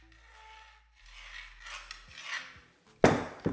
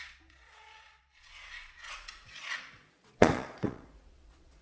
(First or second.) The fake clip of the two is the second